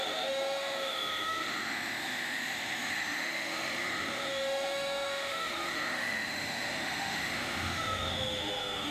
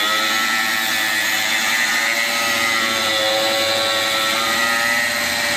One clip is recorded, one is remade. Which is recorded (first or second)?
second